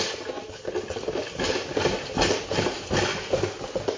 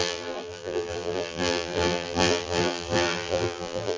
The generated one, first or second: second